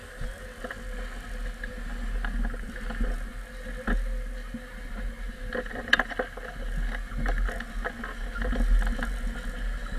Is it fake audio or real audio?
real